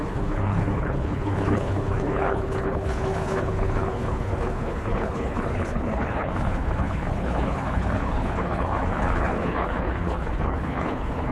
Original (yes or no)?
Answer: no